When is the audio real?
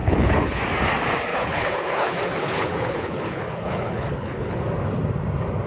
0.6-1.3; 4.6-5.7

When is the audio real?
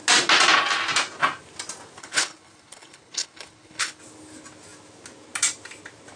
0.0-2.0; 4.0-6.2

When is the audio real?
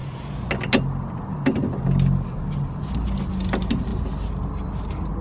0.0-5.2